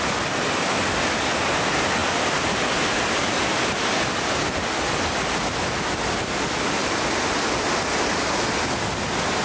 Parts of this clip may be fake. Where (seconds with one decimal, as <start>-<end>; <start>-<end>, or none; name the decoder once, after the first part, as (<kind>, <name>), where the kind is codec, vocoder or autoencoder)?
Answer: none